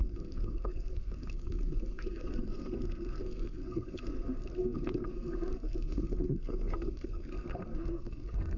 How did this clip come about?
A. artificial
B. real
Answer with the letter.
A